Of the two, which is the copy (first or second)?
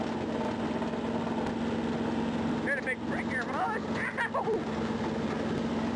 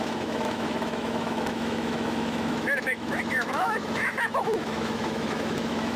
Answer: second